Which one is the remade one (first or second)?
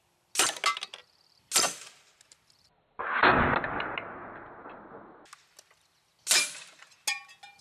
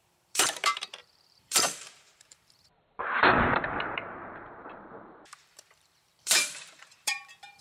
second